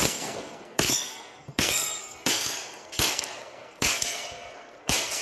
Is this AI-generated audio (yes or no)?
yes